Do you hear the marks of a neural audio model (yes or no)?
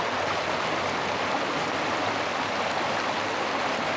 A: no